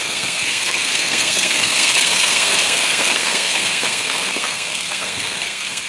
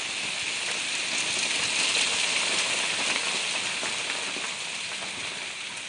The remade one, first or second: first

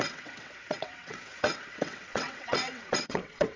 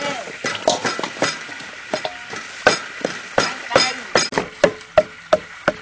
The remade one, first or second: first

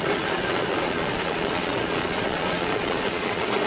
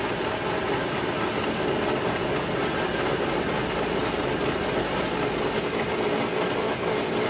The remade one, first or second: first